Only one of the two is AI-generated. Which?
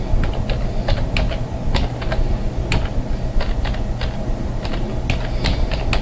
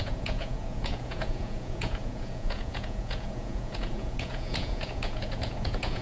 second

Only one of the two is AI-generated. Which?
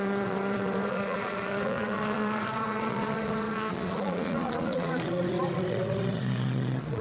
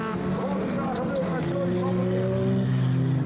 first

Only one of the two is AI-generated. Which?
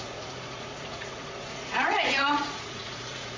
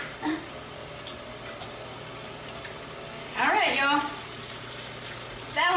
first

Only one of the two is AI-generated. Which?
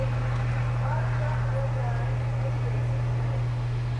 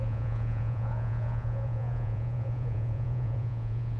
second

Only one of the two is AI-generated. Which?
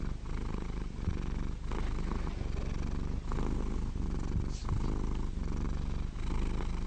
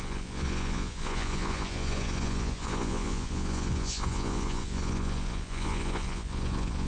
second